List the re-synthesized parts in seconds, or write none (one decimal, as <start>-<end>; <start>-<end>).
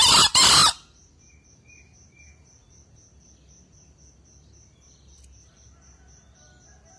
none